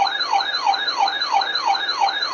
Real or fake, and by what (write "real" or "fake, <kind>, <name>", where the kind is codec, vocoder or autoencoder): real